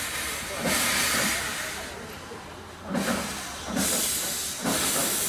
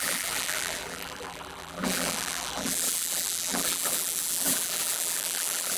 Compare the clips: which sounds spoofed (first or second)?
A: second